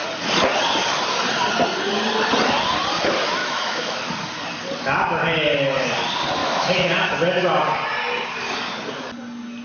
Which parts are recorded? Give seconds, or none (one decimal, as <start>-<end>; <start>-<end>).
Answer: 0.0-3.4; 4.1-6.4; 6.9-9.6